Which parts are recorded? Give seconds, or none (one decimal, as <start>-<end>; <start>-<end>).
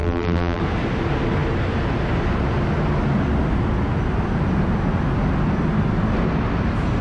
0.6-7.0